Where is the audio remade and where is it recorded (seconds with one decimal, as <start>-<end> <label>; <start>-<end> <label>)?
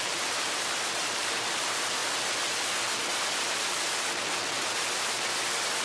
0.0-2.0 remade; 2.0-5.8 recorded